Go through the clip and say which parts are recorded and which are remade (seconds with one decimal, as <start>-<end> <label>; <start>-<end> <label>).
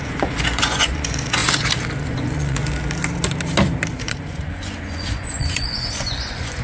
0.0-1.4 remade; 1.4-2.0 recorded; 2.0-2.6 remade; 2.6-4.0 recorded; 4.0-6.6 remade